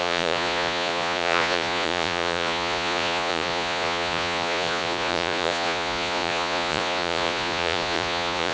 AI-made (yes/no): yes